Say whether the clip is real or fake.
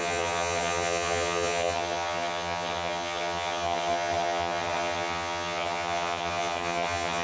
fake